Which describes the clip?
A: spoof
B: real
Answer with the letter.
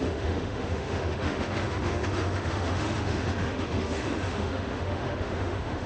A